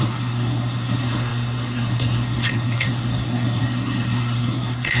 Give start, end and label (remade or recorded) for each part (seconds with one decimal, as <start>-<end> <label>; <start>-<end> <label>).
0.0-5.0 remade